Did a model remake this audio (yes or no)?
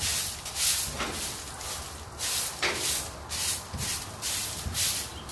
no